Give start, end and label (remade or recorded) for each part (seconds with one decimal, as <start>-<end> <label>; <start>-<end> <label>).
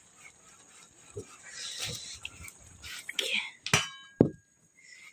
0.0-5.1 recorded